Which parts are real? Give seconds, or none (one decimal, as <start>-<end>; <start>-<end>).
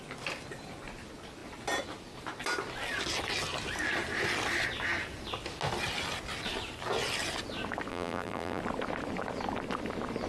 0.0-7.9; 8.6-10.3